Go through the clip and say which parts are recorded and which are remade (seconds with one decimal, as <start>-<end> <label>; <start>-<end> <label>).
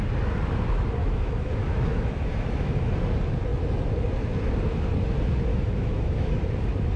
0.0-1.0 recorded; 1.0-2.9 remade; 2.9-5.5 recorded; 5.5-6.3 remade; 6.3-7.0 recorded